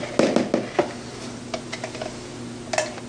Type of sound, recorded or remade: recorded